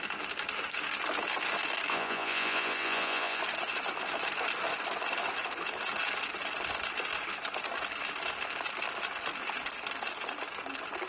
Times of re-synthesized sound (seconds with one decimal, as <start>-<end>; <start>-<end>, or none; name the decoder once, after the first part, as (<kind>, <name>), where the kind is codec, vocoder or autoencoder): 1.9-3.4 (vocoder, Vocos)